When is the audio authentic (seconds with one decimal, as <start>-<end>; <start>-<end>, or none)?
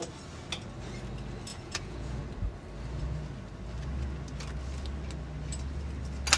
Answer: 0.0-1.5; 2.2-6.4